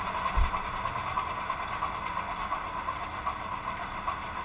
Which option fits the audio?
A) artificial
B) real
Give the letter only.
B